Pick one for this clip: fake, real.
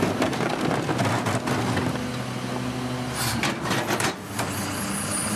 real